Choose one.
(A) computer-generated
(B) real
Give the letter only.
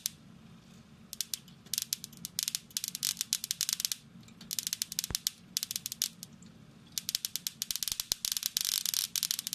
B